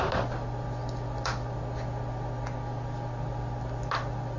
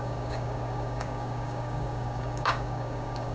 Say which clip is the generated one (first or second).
second